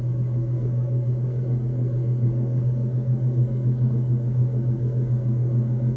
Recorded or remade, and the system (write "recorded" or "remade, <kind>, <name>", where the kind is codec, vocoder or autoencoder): remade, codec, SNAC